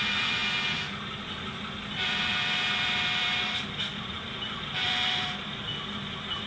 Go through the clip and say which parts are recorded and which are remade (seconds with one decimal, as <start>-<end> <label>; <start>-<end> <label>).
0.0-0.4 remade; 0.4-2.1 recorded; 2.1-6.5 remade